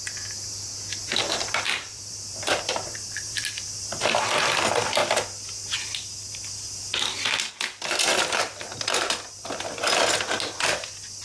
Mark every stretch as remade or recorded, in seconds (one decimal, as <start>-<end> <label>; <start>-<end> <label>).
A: 0.0-1.2 recorded; 1.2-3.5 remade; 3.5-11.2 recorded